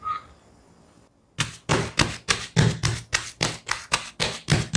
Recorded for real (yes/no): yes